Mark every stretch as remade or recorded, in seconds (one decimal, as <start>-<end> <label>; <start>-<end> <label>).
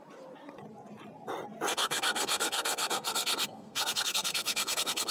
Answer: 0.0-1.7 recorded; 1.7-5.1 remade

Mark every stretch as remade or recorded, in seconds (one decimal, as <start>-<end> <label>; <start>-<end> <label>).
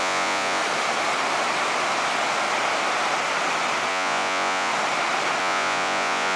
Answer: 0.0-0.6 remade; 0.6-3.9 recorded; 3.9-4.7 remade; 4.7-5.4 recorded; 5.4-6.4 remade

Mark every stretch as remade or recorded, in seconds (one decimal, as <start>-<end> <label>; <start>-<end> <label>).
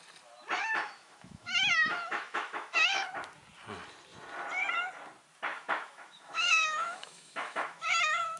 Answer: 0.0-0.6 recorded; 0.6-3.1 remade; 3.1-5.5 recorded; 5.5-8.4 remade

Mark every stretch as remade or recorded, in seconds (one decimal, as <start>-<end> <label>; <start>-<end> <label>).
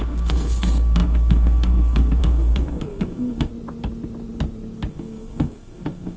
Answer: 0.0-3.5 remade; 3.5-4.9 recorded; 4.9-6.2 remade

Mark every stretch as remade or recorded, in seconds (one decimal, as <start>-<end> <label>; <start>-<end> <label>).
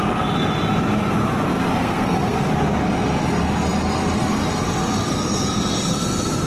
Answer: 0.0-1.8 recorded; 1.8-2.5 remade; 2.5-6.5 recorded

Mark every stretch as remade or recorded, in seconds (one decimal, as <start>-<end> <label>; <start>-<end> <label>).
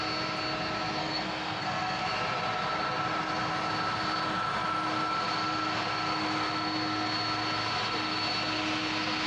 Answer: 0.0-1.0 recorded; 1.0-2.0 remade; 2.0-9.3 recorded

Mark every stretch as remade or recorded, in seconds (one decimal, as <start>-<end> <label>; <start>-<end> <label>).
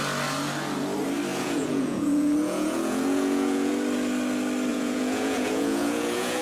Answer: 0.0-1.3 recorded; 1.3-3.7 remade; 3.7-4.7 recorded; 4.7-6.4 remade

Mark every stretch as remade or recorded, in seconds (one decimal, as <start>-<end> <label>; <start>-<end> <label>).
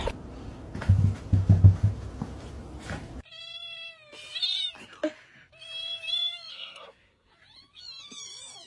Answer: 0.0-6.5 recorded; 6.5-7.3 remade; 7.3-8.7 recorded